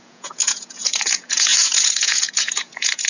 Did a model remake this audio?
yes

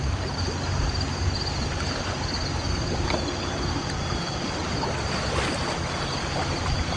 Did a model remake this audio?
no